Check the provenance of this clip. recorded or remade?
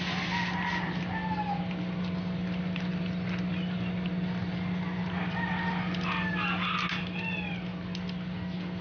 recorded